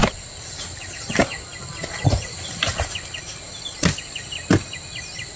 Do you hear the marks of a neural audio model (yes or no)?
no